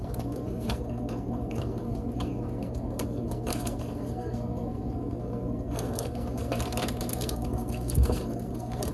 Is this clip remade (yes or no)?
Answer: yes